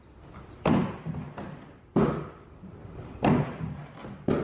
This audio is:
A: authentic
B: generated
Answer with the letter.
A